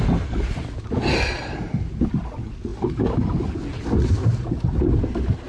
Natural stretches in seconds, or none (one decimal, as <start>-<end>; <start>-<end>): 0.0-5.5